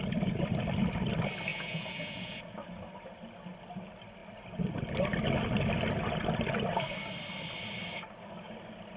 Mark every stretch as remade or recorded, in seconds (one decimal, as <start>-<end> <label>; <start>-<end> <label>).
0.0-1.5 recorded; 1.5-2.4 remade; 2.4-9.0 recorded